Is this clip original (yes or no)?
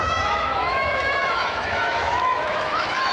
no